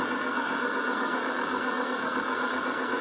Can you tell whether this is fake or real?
fake